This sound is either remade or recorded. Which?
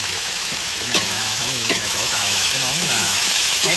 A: remade